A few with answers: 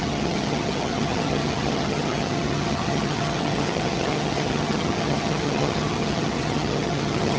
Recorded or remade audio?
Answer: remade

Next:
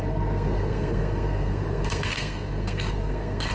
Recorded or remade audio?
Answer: remade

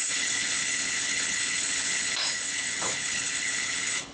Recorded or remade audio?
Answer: remade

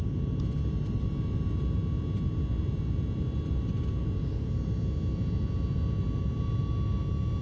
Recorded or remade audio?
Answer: recorded